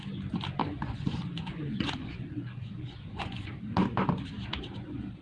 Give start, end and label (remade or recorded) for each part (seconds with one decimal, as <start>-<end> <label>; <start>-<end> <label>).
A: 0.0-0.6 recorded; 0.6-3.5 remade; 3.5-5.2 recorded